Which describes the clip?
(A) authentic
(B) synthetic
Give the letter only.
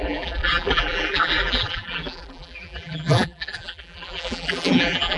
B